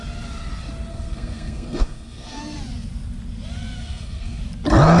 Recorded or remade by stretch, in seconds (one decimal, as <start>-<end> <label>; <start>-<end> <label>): 0.0-0.9 recorded; 0.9-2.4 remade; 2.4-3.8 recorded; 3.8-4.4 remade; 4.4-5.0 recorded